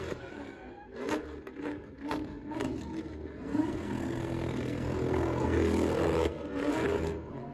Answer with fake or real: fake